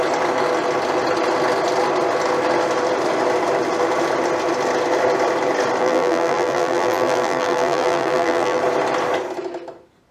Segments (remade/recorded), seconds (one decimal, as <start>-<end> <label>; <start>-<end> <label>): 0.0-5.8 recorded; 5.8-8.6 remade; 8.6-10.1 recorded